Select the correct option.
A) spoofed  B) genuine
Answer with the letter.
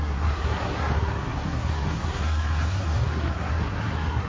A